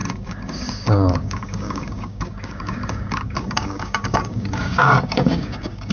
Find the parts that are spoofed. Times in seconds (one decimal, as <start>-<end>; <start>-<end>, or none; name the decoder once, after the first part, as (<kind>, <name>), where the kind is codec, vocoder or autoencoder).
0.0-5.9 (codec, DAC)